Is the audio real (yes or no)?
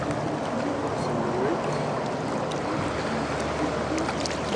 yes